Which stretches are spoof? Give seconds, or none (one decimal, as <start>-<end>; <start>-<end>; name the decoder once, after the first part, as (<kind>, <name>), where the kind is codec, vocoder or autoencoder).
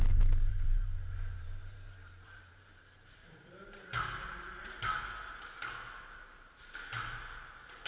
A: 0.5-4.8 (vocoder, BigVGAN v2)